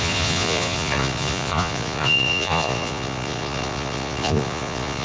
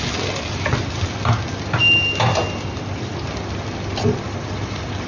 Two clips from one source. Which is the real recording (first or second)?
second